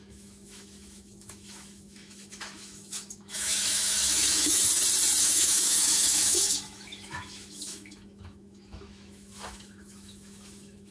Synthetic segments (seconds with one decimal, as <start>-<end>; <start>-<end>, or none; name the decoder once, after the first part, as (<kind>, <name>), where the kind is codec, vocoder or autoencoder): 0.0-4.7 (autoencoder, DAC-VAE); 5.2-10.9